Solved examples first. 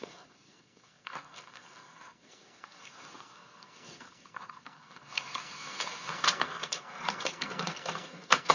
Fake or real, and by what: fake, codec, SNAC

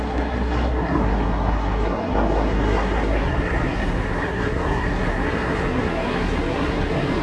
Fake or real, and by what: fake, codec, SNAC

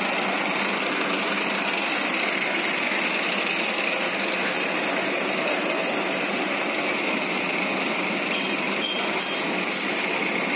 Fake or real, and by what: real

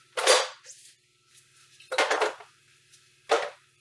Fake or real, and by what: real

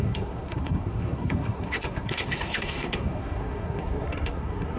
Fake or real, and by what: fake, codec, SNAC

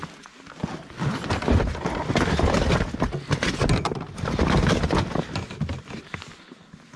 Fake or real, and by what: real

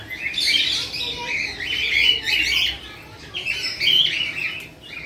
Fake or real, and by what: real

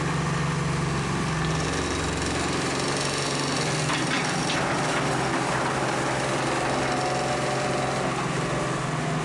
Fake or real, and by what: real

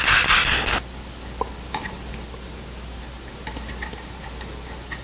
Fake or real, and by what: real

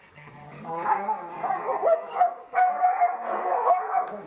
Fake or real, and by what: fake, codec, SNAC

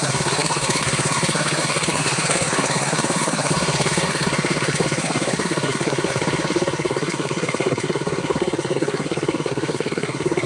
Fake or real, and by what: fake, codec, SNAC